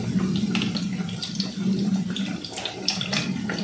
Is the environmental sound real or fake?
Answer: real